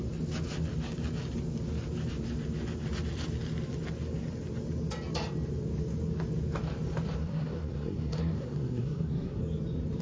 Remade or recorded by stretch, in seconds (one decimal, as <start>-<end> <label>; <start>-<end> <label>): 0.0-7.2 recorded; 7.2-9.4 remade; 9.4-10.0 recorded